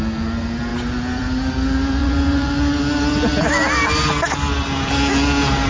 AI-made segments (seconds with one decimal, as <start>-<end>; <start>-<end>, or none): 2.0-2.6